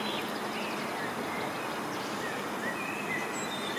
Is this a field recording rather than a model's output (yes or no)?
yes